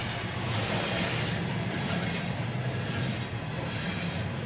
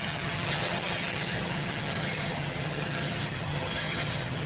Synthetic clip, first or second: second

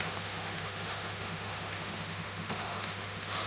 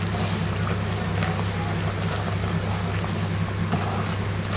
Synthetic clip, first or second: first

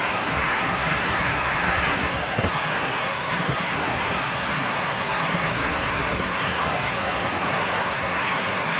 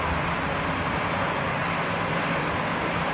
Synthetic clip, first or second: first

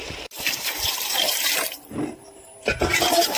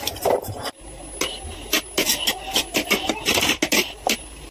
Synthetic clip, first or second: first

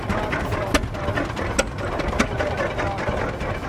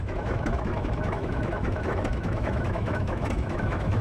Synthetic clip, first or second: second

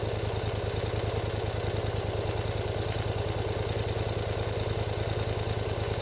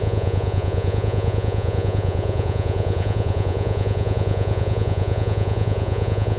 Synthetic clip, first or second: second